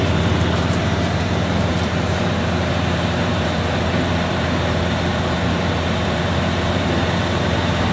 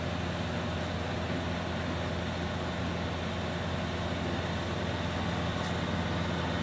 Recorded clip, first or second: second